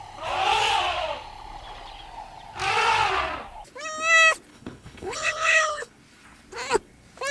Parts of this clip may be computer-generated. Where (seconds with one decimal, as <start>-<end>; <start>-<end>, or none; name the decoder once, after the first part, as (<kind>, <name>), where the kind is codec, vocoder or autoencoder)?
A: 4.5-5.9 (codec, HILCodec)